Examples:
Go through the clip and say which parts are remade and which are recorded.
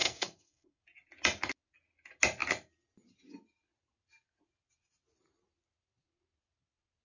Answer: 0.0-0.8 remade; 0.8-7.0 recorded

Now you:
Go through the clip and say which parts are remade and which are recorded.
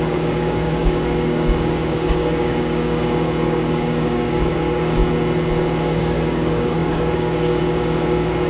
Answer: 0.0-5.0 remade; 5.0-5.8 recorded; 5.8-8.5 remade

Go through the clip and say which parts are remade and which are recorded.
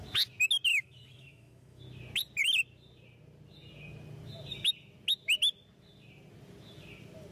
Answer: 0.0-0.7 recorded; 0.7-1.8 remade; 1.8-7.3 recorded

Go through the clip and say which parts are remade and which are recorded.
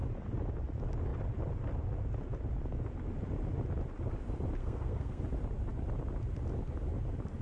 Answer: 0.0-4.6 recorded; 4.6-5.2 remade; 5.2-7.4 recorded